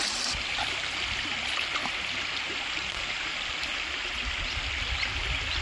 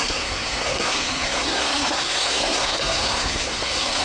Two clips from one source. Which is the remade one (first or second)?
second